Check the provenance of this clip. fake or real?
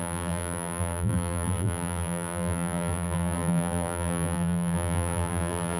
fake